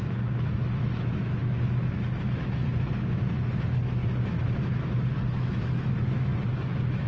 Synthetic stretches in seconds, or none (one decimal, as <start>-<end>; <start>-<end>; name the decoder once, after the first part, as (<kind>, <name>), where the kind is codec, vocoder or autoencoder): 0.0-4.0 (autoencoder, DAC-VAE); 5.4-6.3